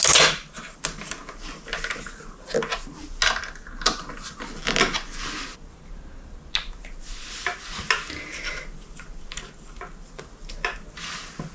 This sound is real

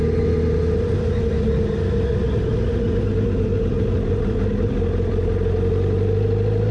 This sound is real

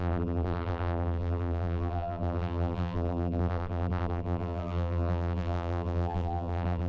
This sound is fake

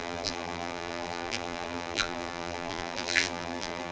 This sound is fake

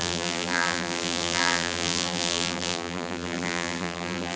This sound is fake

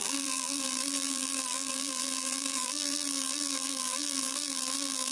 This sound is fake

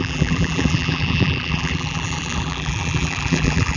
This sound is fake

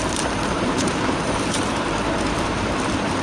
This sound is fake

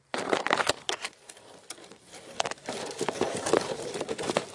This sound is real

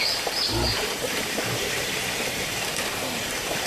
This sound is fake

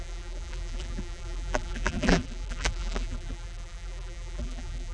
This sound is fake